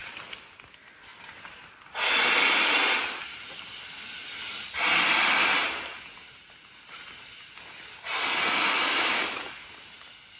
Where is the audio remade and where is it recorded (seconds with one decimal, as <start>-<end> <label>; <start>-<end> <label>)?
0.0-10.4 recorded